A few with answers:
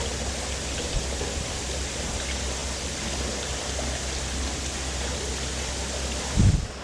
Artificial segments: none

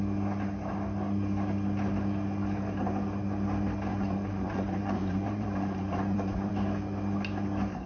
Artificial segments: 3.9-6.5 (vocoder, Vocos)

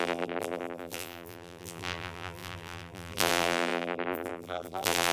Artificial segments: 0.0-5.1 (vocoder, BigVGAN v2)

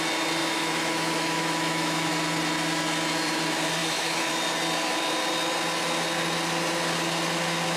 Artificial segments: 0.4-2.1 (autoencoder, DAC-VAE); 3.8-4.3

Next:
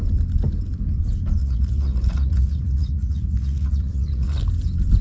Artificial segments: 1.4-4.4 (vocoder, Vocos)